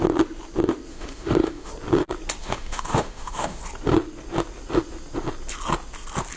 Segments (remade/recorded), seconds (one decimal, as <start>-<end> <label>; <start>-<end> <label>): 0.0-0.9 recorded; 0.9-1.7 remade; 1.7-2.4 recorded; 2.4-3.6 remade; 3.6-6.4 recorded